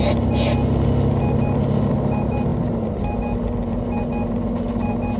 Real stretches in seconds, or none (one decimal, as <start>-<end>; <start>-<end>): 0.0-5.2